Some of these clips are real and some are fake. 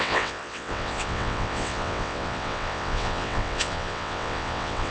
fake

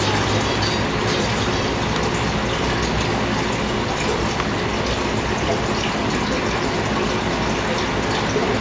real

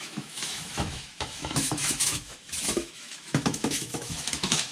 fake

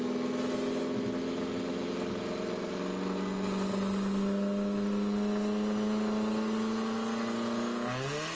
real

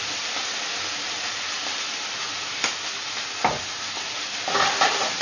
real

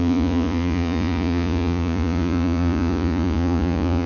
fake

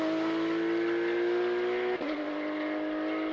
real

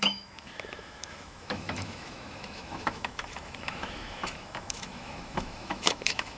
fake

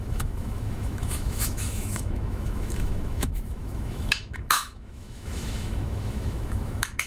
fake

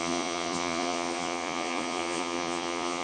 fake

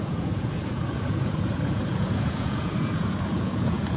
fake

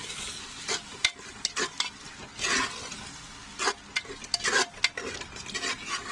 real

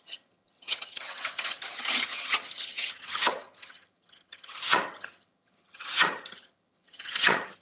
fake